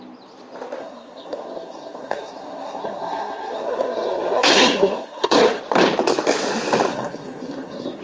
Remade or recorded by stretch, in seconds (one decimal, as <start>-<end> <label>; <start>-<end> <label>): 0.0-0.8 recorded; 0.8-5.6 remade; 5.6-6.9 recorded; 6.9-8.0 remade